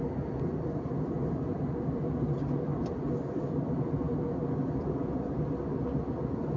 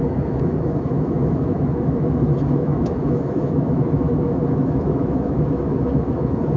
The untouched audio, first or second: first